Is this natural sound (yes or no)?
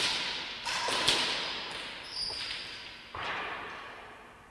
yes